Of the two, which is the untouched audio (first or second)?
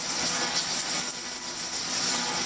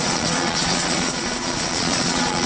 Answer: first